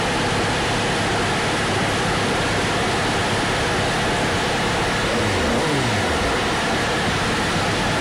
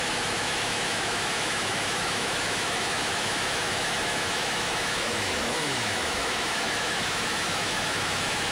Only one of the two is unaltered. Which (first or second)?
first